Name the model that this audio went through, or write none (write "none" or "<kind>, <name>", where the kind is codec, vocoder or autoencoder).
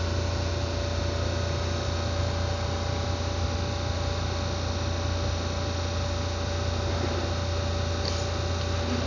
none